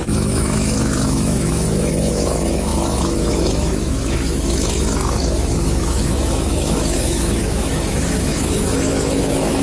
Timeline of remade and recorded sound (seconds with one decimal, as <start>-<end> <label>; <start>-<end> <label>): 0.0-9.6 remade